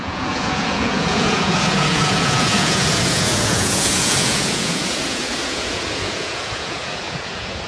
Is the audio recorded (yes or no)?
no